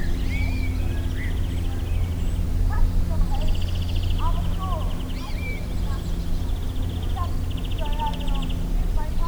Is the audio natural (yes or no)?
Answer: yes